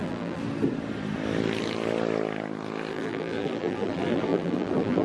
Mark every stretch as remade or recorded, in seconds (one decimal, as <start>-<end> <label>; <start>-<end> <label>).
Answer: 0.0-0.4 remade; 0.4-2.9 recorded; 2.9-5.0 remade